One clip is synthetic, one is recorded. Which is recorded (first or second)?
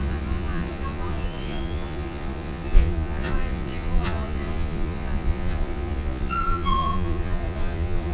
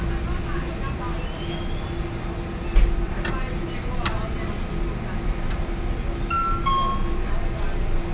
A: second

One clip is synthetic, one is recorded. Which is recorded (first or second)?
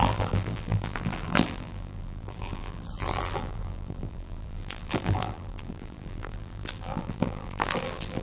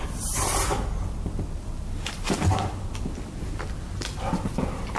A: second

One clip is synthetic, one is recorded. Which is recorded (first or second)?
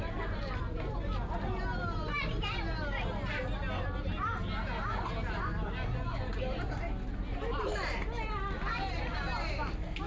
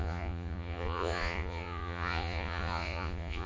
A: first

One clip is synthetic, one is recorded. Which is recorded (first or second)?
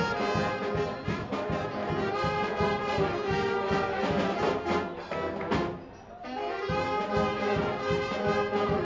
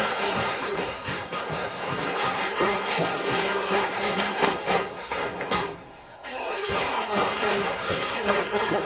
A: first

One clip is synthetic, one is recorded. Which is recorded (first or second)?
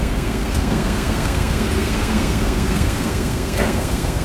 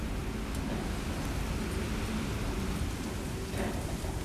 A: second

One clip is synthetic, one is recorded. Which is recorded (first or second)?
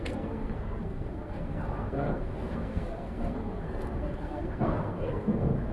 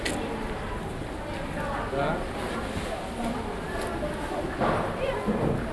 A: second